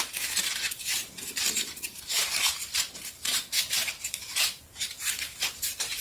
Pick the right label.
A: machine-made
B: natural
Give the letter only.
A